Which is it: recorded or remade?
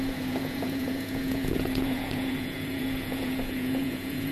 remade